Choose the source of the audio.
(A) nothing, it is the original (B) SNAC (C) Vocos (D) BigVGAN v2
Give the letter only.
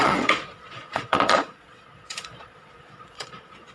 C